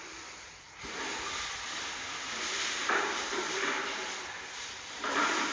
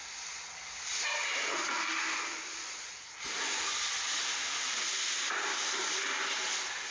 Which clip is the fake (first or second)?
first